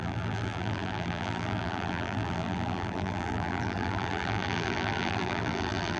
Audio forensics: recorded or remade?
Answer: remade